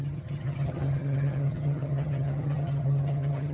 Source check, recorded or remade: remade